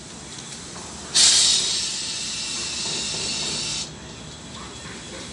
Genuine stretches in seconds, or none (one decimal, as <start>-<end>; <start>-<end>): 0.0-5.3